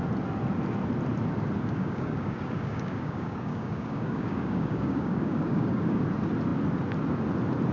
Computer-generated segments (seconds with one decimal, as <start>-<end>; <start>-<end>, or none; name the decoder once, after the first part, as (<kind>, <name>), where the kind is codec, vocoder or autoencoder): 1.6-6.0 (codec, DAC)